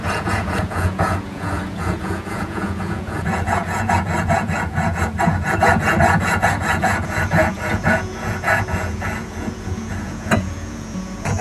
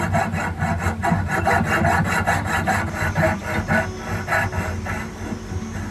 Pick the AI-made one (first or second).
first